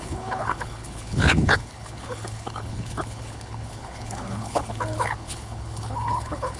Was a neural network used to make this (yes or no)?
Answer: yes